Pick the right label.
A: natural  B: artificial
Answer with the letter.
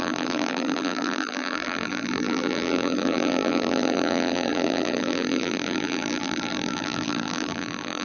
B